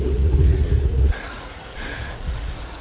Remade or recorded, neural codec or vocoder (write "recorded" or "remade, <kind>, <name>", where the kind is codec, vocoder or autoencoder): remade, vocoder, Vocos